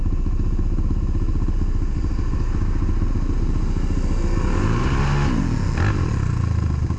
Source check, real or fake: real